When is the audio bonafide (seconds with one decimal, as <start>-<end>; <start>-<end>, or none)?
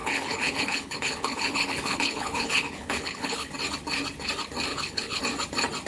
3.5-4.7; 5.2-5.9